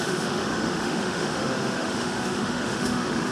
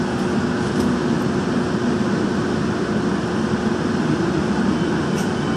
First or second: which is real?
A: second